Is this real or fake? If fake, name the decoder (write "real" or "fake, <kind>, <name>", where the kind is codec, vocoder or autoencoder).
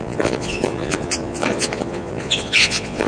fake, vocoder, Vocos